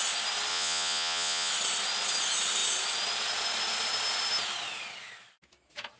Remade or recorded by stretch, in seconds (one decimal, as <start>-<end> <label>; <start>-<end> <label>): 0.0-0.5 recorded; 0.5-1.5 remade; 1.5-6.0 recorded